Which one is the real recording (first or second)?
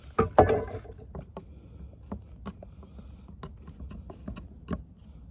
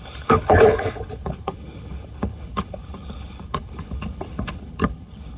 first